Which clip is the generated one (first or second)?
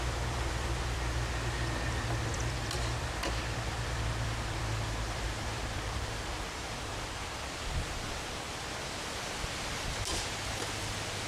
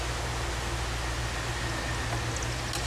first